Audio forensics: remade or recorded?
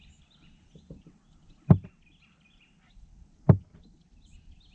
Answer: recorded